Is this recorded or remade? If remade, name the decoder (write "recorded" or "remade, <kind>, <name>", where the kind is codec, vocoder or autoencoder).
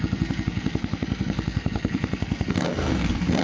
remade, codec, SNAC